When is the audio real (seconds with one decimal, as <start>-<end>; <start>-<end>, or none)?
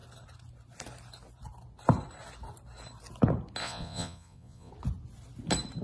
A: 0.0-3.6; 4.7-5.8